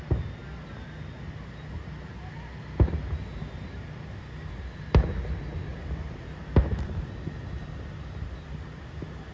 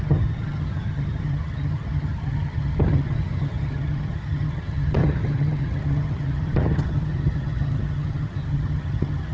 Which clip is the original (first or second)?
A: first